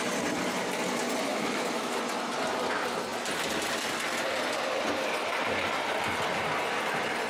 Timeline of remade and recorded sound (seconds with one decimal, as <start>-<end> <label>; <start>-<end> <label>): 0.0-1.3 recorded; 1.3-2.0 remade; 2.0-7.3 recorded